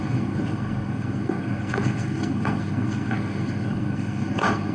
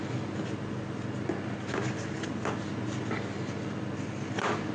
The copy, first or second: first